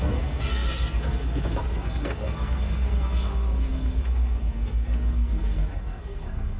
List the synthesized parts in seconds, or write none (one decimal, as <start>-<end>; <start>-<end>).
0.0-6.6